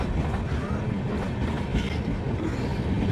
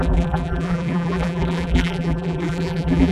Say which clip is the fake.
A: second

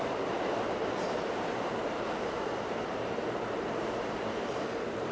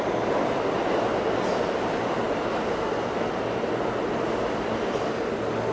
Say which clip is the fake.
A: first